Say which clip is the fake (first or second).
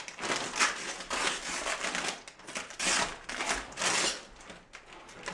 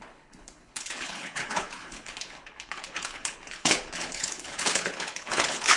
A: second